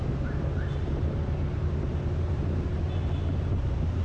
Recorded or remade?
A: recorded